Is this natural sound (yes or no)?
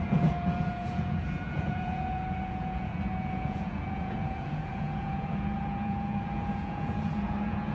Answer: no